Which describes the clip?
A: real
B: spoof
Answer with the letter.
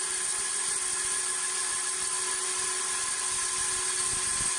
A